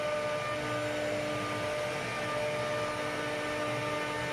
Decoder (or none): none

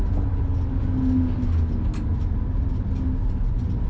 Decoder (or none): none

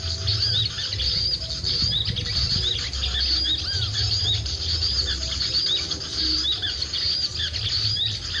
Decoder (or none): none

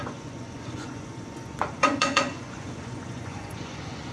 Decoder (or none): vocoder, Vocos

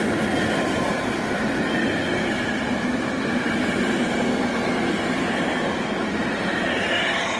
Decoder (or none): none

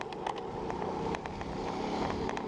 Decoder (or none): none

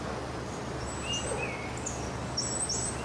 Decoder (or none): none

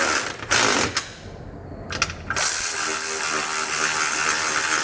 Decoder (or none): none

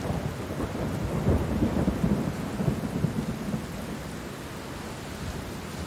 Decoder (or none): none